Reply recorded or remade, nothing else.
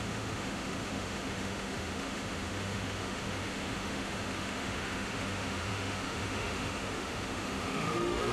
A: remade